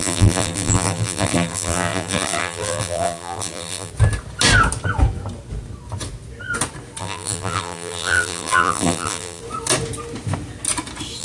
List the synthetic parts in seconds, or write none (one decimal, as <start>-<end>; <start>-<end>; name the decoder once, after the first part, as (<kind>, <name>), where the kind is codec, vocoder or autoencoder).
0.0-3.9 (vocoder, BigVGAN v2); 7.0-9.4